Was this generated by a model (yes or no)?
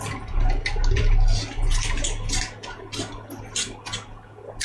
no